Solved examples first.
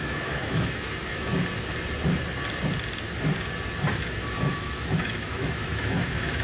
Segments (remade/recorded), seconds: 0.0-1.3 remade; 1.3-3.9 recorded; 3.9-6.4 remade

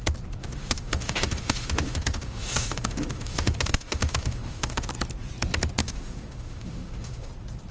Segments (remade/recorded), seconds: 0.0-0.4 recorded; 0.4-4.9 remade; 4.9-5.8 recorded; 5.8-7.3 remade; 7.3-7.7 recorded

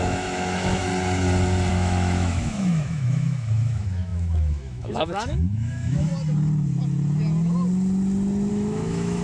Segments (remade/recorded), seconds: 0.0-0.9 remade; 0.9-1.7 recorded; 1.7-6.1 remade; 6.1-8.5 recorded; 8.5-9.2 remade

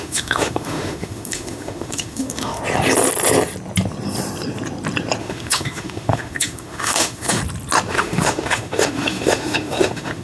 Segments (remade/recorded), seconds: 0.0-2.6 remade; 2.6-5.2 recorded; 5.2-7.4 remade; 7.4-7.9 recorded; 7.9-10.2 remade

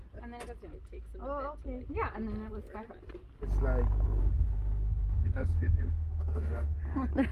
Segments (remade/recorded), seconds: 0.0-4.2 recorded; 4.2-6.8 remade; 6.8-7.3 recorded